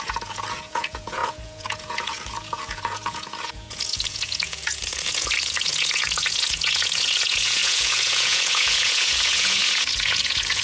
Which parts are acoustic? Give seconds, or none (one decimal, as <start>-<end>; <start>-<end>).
none